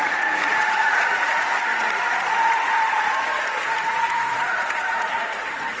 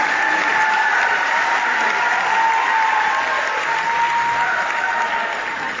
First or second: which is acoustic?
second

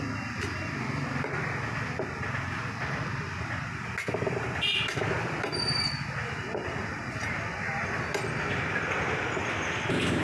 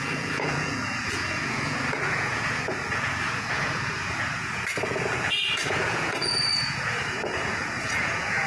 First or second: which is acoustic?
first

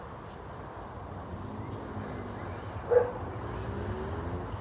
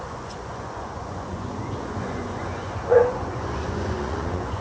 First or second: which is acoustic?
first